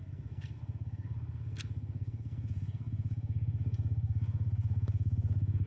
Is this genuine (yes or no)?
no